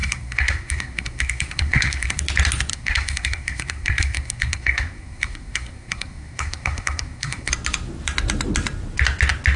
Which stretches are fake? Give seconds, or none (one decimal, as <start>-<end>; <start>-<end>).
0.0-2.2; 2.7-7.5